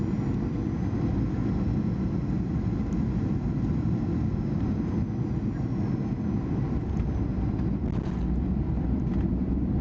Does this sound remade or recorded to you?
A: recorded